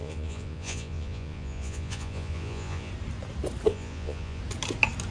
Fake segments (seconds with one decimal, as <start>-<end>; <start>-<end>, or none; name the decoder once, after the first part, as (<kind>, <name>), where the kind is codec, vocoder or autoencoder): 0.0-2.9 (vocoder, Vocos); 3.7-4.4